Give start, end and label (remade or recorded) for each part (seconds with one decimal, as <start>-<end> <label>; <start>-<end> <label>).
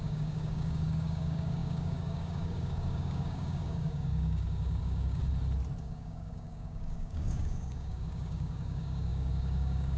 0.0-5.2 remade; 5.2-5.8 recorded; 5.8-10.0 remade